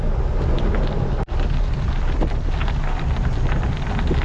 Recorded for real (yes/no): yes